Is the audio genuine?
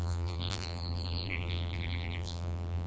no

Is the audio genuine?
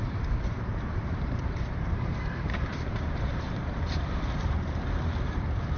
no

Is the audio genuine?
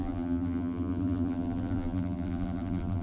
no